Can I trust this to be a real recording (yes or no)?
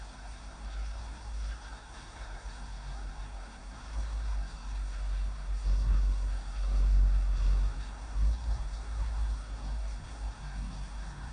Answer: no